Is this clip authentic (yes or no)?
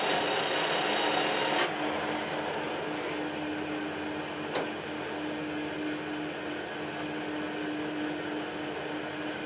yes